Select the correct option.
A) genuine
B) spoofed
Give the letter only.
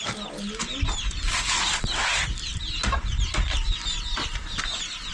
A